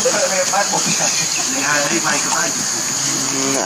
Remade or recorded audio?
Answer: remade